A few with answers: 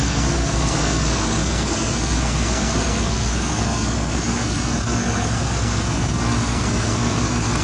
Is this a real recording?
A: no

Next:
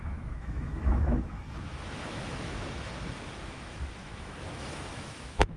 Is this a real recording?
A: no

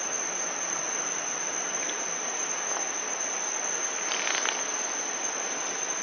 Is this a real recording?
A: yes